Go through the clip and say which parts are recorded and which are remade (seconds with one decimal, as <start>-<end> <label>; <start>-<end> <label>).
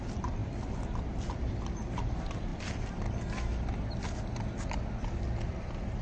0.0-6.0 recorded